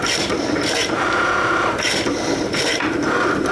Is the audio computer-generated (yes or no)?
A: yes